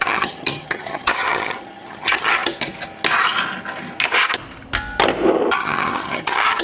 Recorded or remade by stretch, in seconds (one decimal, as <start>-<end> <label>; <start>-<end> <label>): 0.0-2.4 remade; 2.4-5.5 recorded; 5.5-6.6 remade